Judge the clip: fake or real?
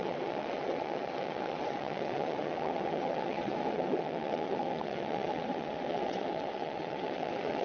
fake